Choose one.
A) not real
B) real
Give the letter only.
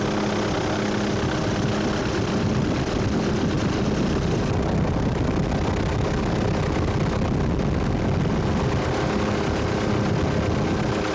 B